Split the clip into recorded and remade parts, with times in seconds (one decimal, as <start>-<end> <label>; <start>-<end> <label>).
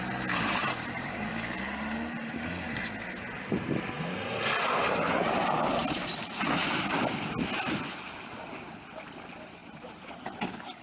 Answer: 0.0-0.6 recorded; 0.6-1.3 remade; 1.3-9.6 recorded; 9.6-10.4 remade; 10.4-10.8 recorded